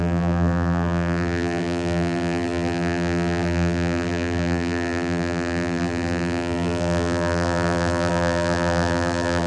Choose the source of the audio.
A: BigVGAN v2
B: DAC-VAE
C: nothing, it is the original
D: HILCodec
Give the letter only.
A